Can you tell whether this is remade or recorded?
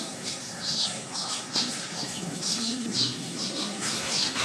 remade